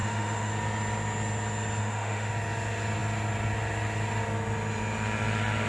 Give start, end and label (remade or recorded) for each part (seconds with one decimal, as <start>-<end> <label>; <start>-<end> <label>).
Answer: 0.0-0.5 remade; 0.5-1.8 recorded; 1.8-2.3 remade; 2.3-5.7 recorded